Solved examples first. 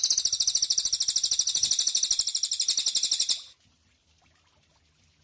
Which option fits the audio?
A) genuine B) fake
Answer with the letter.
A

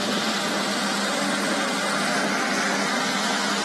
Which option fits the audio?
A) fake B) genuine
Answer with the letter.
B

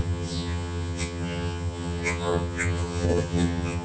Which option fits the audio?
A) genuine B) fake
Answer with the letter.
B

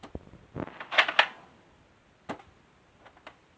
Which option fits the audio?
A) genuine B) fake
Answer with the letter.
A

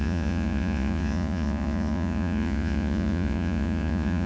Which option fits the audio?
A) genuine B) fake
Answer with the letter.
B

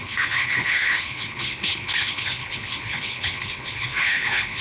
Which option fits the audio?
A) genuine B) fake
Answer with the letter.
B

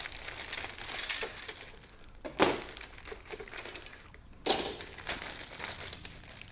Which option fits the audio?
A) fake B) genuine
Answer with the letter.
B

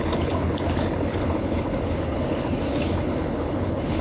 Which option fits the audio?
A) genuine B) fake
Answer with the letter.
B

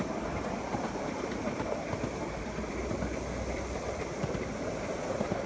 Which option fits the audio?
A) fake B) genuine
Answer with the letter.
B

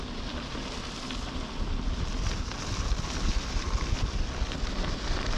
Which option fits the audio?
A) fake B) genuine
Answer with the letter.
B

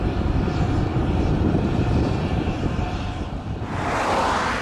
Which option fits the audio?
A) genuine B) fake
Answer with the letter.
B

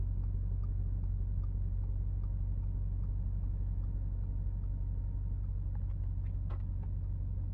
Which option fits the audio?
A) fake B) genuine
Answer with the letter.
B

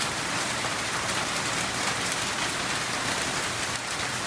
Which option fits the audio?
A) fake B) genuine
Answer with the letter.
A